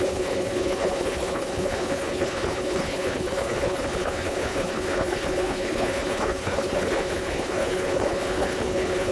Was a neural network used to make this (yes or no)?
yes